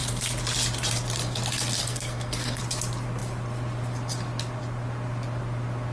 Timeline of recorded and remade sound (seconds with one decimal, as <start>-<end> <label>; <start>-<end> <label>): 0.0-1.8 recorded; 1.8-2.6 remade; 2.6-5.9 recorded